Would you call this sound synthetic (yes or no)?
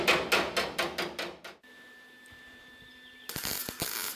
no